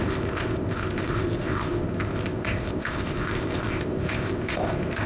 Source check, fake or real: fake